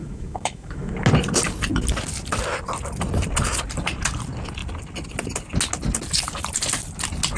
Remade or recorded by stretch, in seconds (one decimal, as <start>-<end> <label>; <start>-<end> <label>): 0.0-0.9 remade; 0.9-7.4 recorded